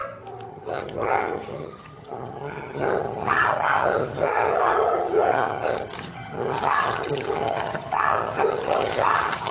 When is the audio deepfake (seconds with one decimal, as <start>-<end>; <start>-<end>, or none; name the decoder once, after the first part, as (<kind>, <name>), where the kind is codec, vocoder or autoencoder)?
0.5-9.5 (vocoder, HiFi-GAN)